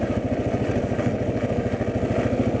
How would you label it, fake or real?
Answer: real